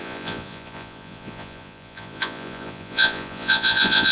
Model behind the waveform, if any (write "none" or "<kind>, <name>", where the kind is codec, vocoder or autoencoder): vocoder, Vocos